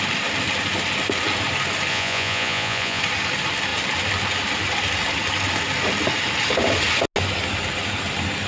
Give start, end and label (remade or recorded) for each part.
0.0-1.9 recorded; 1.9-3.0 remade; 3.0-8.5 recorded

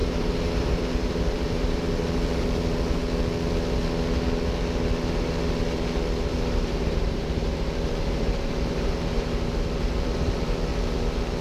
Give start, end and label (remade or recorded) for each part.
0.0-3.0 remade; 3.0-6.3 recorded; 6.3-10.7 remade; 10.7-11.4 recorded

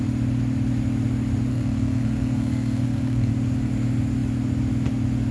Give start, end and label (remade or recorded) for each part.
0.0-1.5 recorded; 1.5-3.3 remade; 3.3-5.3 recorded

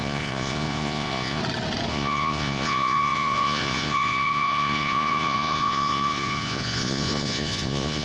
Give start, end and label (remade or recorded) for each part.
0.0-1.4 remade; 1.4-1.9 recorded; 1.9-8.0 remade

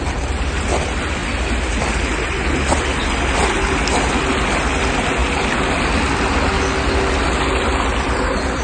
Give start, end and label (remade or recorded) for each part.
0.0-8.6 recorded

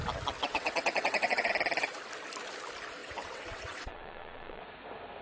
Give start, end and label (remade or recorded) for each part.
0.0-0.4 recorded; 0.4-1.5 remade; 1.5-3.0 recorded; 3.0-4.6 remade; 4.6-5.2 recorded

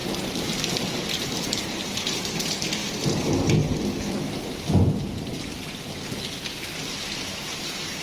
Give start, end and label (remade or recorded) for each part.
0.0-2.8 remade; 2.8-4.9 recorded; 4.9-5.5 remade; 5.5-7.6 recorded; 7.6-8.0 remade

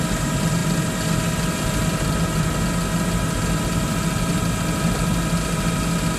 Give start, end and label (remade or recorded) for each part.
0.0-6.2 recorded